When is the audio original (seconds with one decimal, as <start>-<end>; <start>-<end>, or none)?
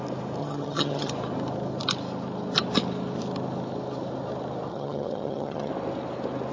0.0-0.4; 1.1-4.7; 5.7-6.5